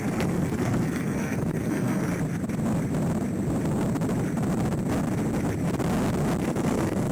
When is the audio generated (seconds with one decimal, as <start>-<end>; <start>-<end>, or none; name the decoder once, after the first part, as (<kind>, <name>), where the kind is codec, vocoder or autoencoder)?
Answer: 0.0-2.1 (codec, SNAC); 6.4-7.1